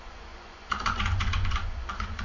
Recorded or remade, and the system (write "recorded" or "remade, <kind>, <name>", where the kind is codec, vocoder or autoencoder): remade, vocoder, Vocos